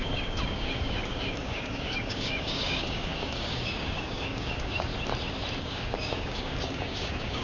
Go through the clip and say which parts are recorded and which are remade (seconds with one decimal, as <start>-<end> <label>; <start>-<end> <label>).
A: 0.0-4.9 remade; 4.9-5.6 recorded; 5.6-7.4 remade